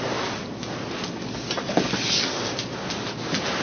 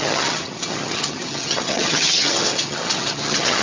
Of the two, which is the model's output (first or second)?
second